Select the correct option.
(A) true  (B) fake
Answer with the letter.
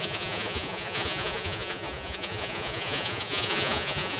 B